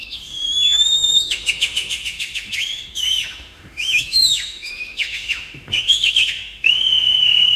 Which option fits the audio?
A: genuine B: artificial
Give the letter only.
B